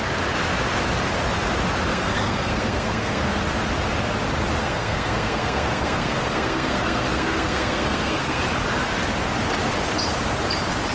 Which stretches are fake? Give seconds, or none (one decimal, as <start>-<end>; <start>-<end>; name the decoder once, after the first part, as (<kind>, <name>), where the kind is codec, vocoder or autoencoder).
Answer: 1.9-3.3 (codec, SNAC); 4.6-8.4